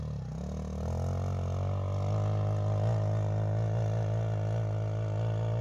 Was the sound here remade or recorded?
recorded